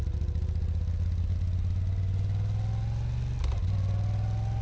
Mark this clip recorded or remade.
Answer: recorded